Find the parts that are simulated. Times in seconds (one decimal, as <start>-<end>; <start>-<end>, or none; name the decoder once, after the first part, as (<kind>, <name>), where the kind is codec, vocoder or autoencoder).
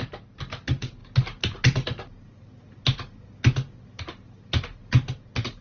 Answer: none